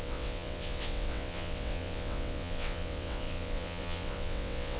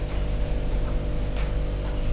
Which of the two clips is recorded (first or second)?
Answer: second